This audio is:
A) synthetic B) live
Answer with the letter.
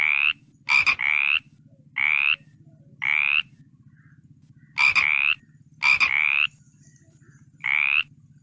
B